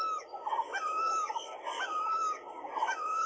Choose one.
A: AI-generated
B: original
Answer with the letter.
B